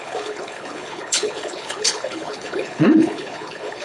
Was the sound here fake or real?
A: fake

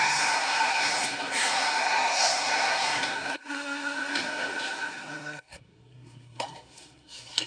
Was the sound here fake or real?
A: fake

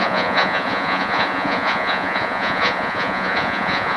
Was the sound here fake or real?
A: fake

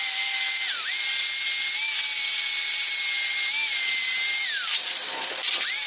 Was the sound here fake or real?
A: real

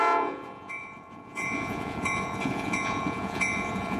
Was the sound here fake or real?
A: fake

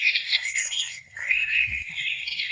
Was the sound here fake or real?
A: fake